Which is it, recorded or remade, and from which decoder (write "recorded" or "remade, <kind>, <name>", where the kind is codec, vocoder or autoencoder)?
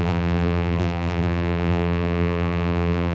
remade, vocoder, BigVGAN v2